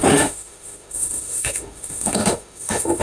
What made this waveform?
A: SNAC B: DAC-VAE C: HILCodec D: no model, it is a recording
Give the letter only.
B